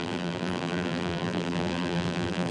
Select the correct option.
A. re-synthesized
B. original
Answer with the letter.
A